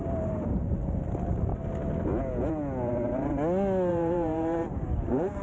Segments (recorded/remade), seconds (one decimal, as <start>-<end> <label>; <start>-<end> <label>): 0.0-1.5 remade; 1.5-3.9 recorded; 3.9-5.4 remade

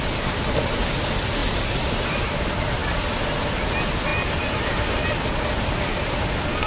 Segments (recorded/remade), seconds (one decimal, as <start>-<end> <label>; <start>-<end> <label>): 0.0-6.7 recorded

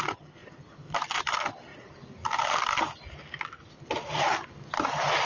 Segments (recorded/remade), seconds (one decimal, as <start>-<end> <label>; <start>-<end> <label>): 0.0-0.4 recorded; 0.4-1.2 remade; 1.2-5.3 recorded

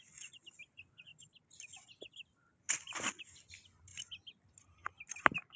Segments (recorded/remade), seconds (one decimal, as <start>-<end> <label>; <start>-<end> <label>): 0.0-5.6 recorded

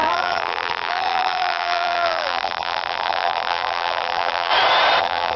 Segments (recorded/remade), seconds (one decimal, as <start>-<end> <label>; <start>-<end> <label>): 0.0-4.5 remade; 4.5-5.0 recorded; 5.0-5.4 remade

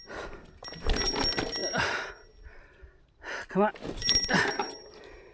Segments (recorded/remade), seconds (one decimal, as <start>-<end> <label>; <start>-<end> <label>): 0.0-1.6 recorded; 1.6-2.1 remade; 2.1-4.0 recorded; 4.0-5.3 remade